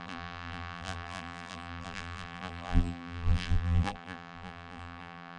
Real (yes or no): no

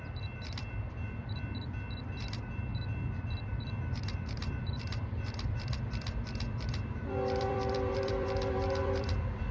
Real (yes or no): no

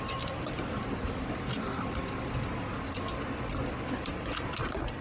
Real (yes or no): yes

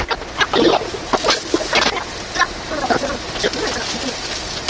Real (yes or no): yes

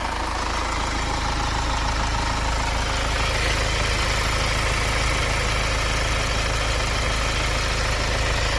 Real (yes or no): yes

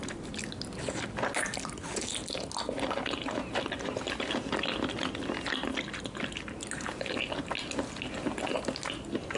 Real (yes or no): yes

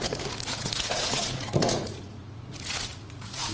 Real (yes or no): no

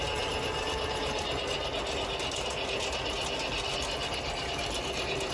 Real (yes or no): yes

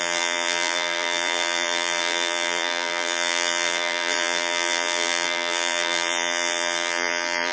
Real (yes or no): no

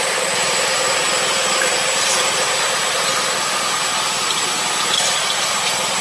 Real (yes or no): yes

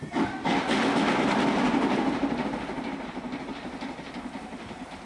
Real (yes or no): yes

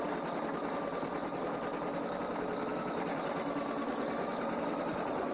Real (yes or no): yes